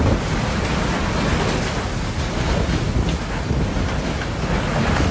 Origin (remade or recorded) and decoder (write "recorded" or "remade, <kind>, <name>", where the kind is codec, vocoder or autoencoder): recorded